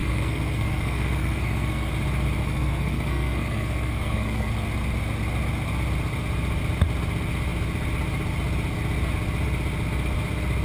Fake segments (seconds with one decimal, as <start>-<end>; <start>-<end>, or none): 0.0-1.9; 2.4-4.5